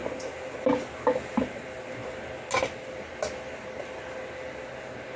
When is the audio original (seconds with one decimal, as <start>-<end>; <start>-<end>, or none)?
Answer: 0.0-5.2